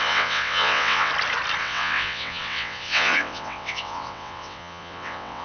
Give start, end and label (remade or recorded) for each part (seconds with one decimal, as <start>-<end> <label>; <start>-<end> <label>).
0.0-1.1 remade; 1.1-1.6 recorded; 1.6-5.4 remade